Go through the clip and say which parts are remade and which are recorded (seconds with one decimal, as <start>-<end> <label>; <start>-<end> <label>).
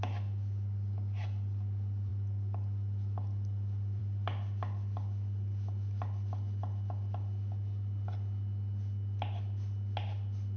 0.0-10.6 recorded